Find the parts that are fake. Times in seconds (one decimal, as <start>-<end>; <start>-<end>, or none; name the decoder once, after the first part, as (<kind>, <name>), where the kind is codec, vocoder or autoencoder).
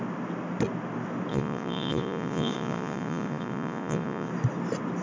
1.3-4.3 (vocoder, Vocos)